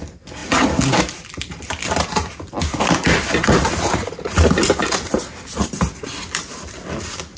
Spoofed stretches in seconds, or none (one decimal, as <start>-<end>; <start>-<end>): none